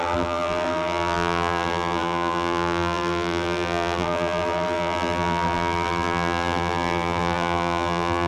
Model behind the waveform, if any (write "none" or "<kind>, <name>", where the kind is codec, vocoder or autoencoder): vocoder, BigVGAN v2